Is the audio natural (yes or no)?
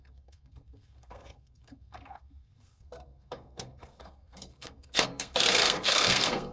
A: no